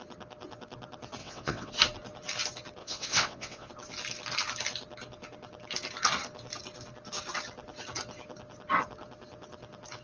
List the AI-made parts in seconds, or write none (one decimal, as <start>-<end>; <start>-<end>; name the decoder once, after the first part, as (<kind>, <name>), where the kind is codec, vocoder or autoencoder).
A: 1.2-1.7 (vocoder, WaveNeXt); 2.8-3.7